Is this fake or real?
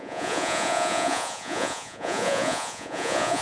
fake